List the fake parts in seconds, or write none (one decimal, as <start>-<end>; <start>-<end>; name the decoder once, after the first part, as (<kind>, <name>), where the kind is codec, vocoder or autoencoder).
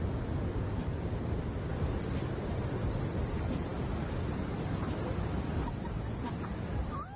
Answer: none